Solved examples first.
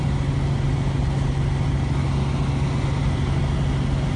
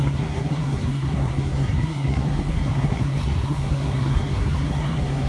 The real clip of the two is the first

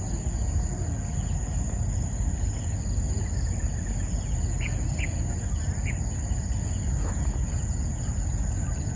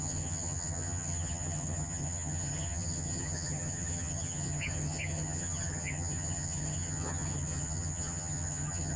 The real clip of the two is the first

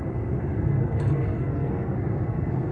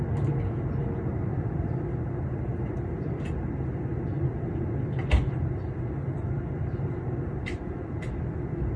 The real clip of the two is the second